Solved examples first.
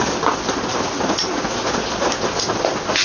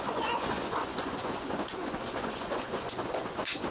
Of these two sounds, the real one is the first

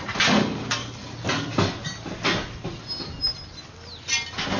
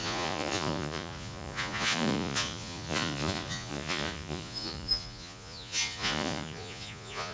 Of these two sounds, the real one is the first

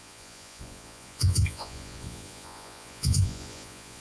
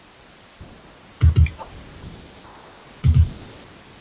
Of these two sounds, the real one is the second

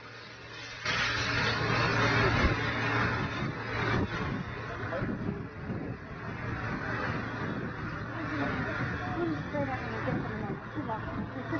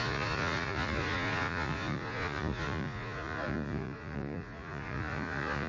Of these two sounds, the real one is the first